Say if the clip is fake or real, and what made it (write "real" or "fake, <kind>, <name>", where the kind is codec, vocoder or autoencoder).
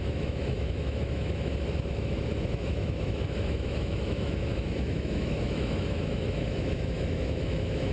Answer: fake, autoencoder, DAC-VAE